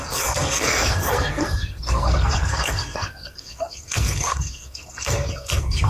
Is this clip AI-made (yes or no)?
yes